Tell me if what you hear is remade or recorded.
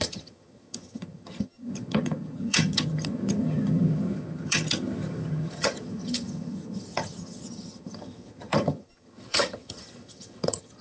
remade